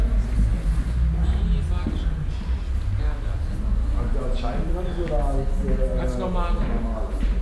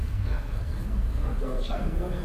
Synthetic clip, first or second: second